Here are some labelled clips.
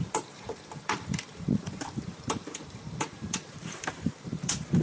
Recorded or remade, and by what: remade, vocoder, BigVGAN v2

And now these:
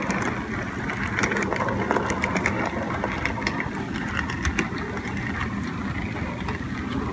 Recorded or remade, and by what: recorded